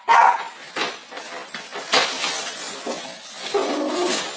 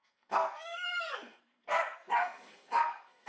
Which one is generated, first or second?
second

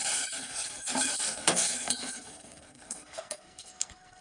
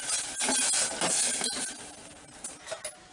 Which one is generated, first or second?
first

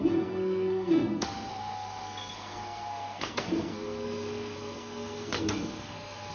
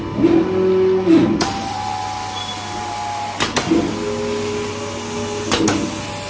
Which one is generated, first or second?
first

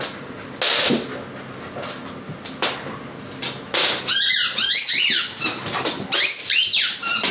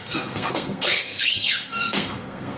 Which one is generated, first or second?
second